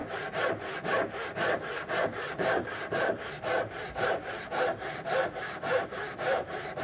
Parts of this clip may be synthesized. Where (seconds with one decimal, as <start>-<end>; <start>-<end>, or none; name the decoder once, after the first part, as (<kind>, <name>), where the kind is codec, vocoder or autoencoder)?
2.0-6.8 (vocoder, BigVGAN v2)